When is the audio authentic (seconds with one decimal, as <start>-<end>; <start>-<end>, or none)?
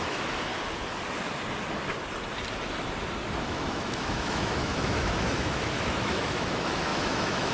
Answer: 0.5-3.4